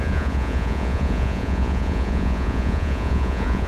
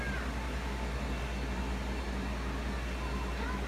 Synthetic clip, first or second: first